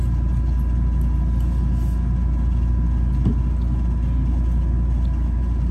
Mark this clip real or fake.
real